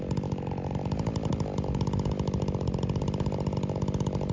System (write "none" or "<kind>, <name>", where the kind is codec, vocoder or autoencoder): none